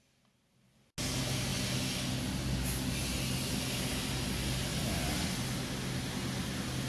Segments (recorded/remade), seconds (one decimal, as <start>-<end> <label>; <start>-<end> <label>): 0.0-6.9 recorded